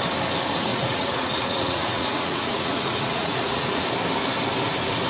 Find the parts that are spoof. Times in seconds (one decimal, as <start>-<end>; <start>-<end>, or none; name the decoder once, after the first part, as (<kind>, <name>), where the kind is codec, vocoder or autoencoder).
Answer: 0.7-3.8 (vocoder, Vocos)